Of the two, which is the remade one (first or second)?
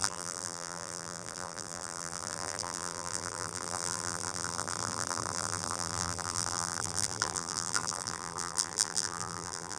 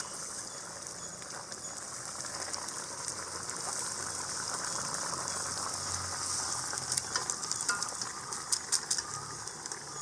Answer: first